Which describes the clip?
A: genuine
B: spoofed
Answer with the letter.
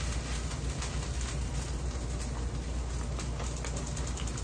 A